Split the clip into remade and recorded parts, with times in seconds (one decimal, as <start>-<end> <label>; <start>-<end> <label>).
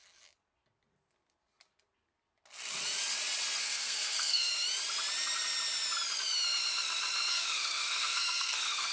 0.0-3.6 recorded; 3.6-4.5 remade; 4.5-7.3 recorded; 7.3-8.9 remade